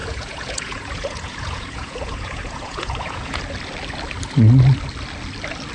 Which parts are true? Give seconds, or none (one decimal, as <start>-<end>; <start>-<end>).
3.4-5.7